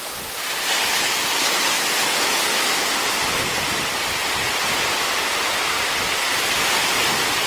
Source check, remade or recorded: recorded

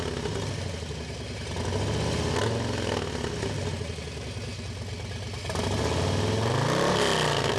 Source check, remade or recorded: recorded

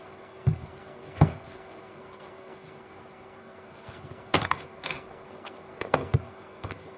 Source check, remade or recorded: remade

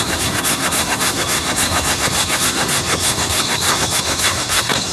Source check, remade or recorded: remade